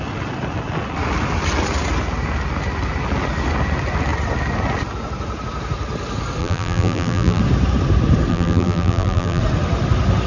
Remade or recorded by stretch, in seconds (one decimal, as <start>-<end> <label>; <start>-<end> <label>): 0.0-6.4 recorded; 6.4-7.4 remade; 7.4-8.3 recorded; 8.3-9.4 remade; 9.4-10.3 recorded